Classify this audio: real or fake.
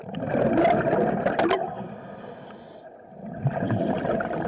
real